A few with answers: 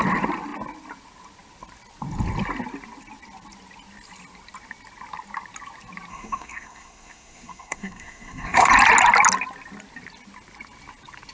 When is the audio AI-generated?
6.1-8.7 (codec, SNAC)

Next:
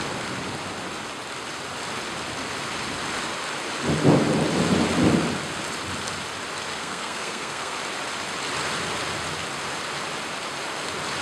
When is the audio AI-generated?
6.7-7.8 (codec, SNAC)

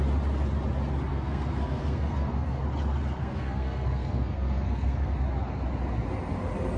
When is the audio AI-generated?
1.1-2.6 (codec, SNAC); 3.2-5.1

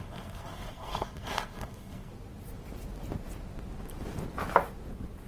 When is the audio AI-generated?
0.0-2.1 (codec, SNAC)

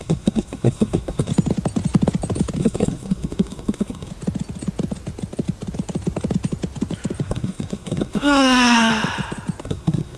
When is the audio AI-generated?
0.0-1.3 (codec, SNAC); 2.6-4.1; 7.2-8.9; 9.6-10.2